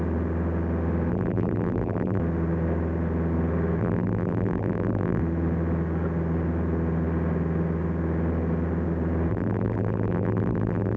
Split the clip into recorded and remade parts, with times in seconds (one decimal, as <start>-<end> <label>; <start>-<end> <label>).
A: 0.0-1.1 recorded; 1.1-2.2 remade; 2.2-3.8 recorded; 3.8-5.2 remade; 5.2-9.3 recorded; 9.3-11.0 remade